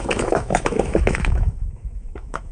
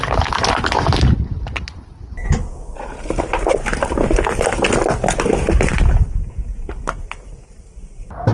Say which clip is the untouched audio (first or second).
second